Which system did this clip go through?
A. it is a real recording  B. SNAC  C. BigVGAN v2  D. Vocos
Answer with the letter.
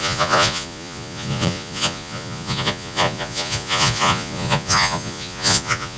D